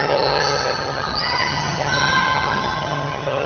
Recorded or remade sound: remade